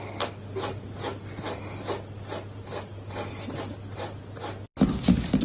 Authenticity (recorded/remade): recorded